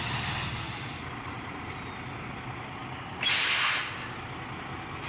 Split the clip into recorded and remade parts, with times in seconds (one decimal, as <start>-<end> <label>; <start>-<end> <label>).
0.0-5.1 recorded